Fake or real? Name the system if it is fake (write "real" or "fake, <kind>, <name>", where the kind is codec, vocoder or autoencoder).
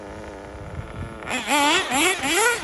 real